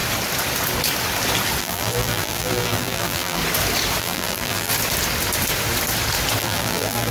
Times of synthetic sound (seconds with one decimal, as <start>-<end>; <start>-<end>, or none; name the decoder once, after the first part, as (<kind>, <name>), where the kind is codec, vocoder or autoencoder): 1.6-3.4 (vocoder, BigVGAN v2); 4.0-4.7; 6.4-7.1

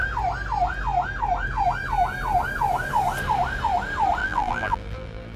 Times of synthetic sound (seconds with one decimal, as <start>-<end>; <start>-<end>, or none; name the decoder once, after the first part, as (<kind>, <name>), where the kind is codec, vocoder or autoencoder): 4.2-5.4 (vocoder, BigVGAN v2)